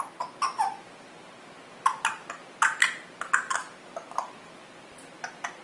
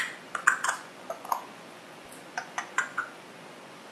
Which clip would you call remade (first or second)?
second